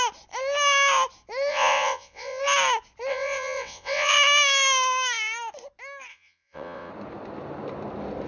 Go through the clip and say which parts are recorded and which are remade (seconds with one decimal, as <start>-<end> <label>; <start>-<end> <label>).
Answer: 0.0-1.5 recorded; 1.5-2.4 remade; 2.4-3.1 recorded; 3.1-4.1 remade; 4.1-6.1 recorded; 6.1-6.9 remade; 6.9-8.3 recorded